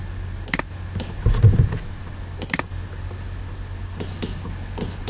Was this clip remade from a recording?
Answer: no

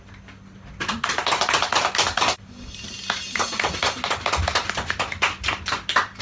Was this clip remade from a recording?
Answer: no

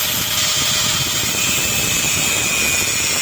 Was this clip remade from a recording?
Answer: no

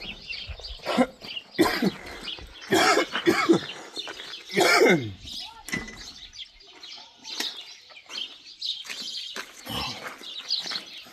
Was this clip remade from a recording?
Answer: no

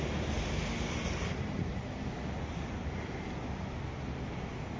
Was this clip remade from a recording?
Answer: no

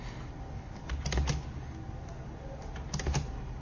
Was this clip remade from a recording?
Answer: no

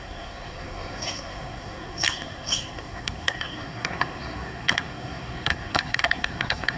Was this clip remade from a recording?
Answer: yes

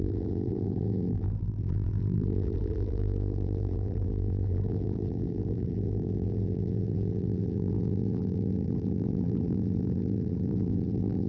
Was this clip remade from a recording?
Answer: yes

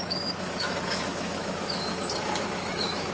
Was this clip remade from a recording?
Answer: yes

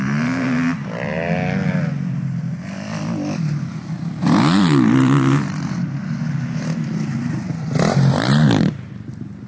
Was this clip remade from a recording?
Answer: no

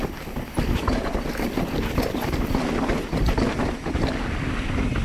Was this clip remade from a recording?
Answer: no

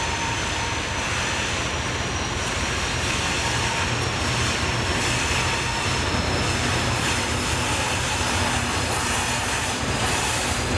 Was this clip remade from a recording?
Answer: no